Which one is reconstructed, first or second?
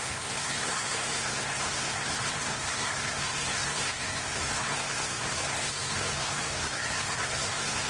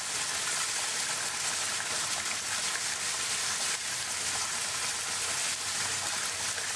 first